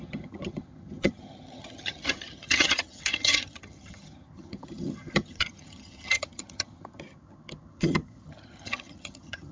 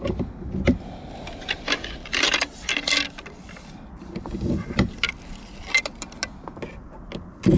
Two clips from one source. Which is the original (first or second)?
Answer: second